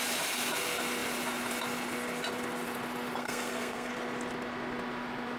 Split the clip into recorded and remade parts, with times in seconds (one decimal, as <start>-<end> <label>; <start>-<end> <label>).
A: 0.0-3.2 recorded; 3.2-3.9 remade; 3.9-5.4 recorded